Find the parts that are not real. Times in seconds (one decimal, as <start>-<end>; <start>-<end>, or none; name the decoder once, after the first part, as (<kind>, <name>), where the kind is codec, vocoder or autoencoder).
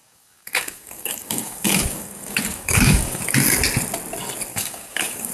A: 0.0-3.2 (codec, DAC); 4.5-5.3